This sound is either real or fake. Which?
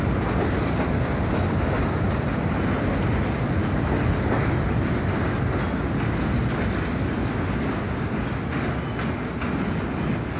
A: real